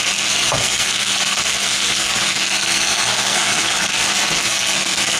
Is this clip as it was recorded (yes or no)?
no